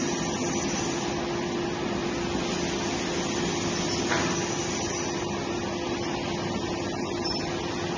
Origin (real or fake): real